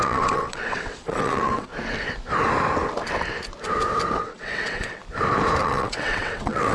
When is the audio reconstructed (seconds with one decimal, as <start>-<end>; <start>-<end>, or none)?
0.0-1.7; 4.2-5.0; 5.6-6.7